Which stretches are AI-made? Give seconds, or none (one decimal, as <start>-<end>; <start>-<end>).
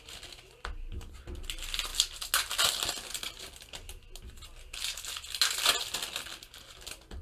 none